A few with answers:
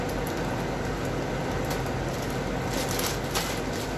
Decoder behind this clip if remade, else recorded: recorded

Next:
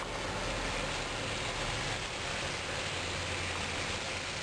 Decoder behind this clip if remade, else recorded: recorded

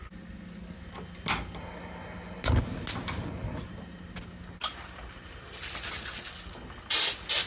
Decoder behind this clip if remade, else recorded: recorded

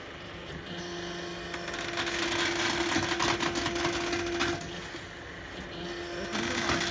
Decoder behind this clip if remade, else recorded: recorded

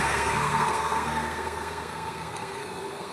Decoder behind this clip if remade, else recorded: remade, codec, SNAC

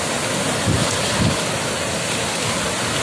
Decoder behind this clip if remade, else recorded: recorded